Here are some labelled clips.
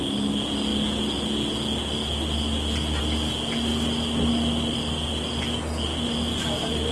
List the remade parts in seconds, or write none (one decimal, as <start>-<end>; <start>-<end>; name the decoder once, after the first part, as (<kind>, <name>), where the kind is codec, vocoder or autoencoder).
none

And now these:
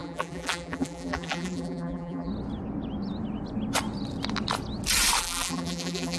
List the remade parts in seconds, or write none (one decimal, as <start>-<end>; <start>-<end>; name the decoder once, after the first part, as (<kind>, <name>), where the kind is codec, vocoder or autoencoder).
0.0-2.3 (vocoder, BigVGAN v2); 5.2-6.2

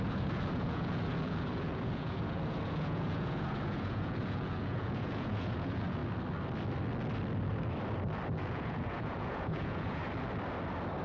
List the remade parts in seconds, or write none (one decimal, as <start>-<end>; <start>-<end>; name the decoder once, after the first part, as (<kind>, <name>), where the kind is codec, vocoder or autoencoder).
0.0-6.0 (vocoder, Vocos); 8.4-10.0

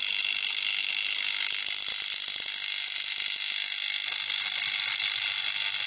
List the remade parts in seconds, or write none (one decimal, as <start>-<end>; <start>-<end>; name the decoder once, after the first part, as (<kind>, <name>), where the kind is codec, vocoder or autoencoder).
none

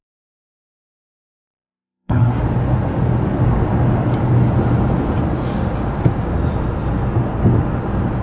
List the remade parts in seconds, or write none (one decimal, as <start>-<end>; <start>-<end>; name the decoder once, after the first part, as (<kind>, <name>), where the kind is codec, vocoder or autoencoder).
1.4-2.4 (codec, SNAC)